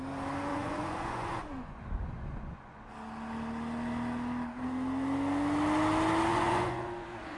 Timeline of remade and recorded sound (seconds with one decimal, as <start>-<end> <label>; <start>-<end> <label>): 0.0-0.5 recorded; 0.5-2.8 remade; 2.8-6.3 recorded; 6.3-7.4 remade